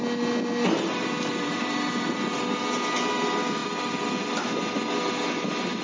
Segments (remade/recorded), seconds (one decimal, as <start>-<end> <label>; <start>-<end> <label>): 0.0-1.3 recorded; 1.3-2.6 remade; 2.6-3.6 recorded; 3.6-4.6 remade; 4.6-5.8 recorded